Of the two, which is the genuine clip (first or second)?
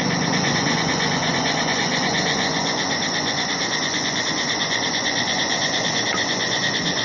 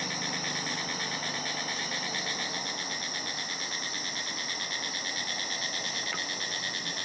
second